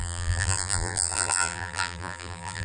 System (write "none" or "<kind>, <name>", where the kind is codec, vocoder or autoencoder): vocoder, BigVGAN v2